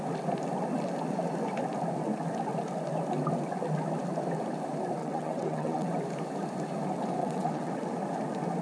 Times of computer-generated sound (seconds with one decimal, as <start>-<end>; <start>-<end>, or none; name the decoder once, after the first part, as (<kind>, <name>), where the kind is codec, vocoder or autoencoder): 5.0-5.9 (vocoder, WaveNeXt); 7.2-7.7